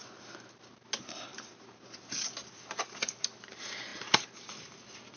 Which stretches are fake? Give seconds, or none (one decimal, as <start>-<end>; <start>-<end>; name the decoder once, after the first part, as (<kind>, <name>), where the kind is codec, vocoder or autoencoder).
none